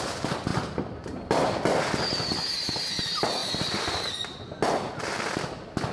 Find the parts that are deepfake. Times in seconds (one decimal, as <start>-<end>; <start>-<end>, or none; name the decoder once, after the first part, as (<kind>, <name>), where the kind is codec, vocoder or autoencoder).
0.0-5.9 (vocoder, BigVGAN v2)